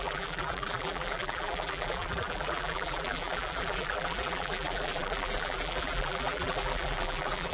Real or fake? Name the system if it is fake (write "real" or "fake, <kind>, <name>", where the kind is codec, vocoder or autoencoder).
fake, vocoder, BigVGAN v2